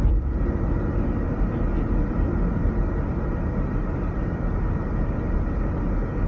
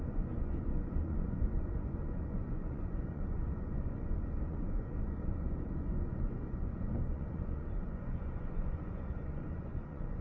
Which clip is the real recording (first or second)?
first